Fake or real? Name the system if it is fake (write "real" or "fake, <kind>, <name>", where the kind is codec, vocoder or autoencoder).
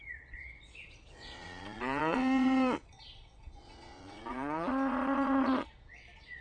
fake, vocoder, Vocos